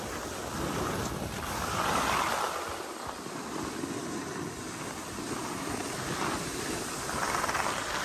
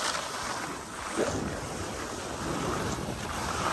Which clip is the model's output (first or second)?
second